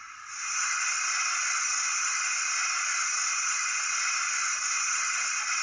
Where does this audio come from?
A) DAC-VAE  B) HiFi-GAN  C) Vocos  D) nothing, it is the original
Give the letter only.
D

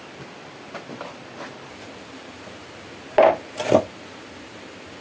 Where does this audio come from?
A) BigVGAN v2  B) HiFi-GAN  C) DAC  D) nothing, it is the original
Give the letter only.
D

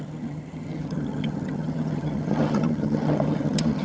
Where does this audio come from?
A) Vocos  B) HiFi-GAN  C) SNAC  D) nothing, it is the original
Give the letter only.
B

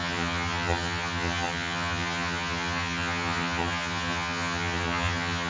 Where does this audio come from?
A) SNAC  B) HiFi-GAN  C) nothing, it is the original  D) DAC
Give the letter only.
B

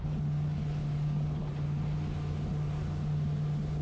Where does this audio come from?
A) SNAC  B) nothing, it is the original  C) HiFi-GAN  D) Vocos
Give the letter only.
B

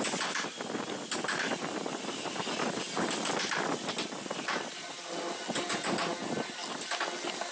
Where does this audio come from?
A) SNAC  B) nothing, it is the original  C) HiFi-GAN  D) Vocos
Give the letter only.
B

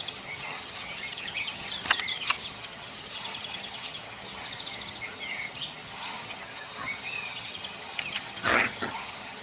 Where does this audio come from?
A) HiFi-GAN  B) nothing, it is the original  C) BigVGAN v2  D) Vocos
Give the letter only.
A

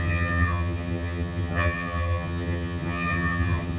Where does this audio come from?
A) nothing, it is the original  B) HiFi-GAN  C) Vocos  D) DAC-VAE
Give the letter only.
B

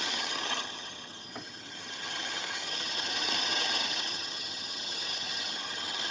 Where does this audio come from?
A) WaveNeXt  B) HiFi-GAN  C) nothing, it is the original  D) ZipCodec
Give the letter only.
B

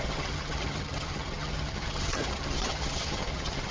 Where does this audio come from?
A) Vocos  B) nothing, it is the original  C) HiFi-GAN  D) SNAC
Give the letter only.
C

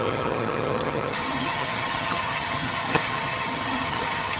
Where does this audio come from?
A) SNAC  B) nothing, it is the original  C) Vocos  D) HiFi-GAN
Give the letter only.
D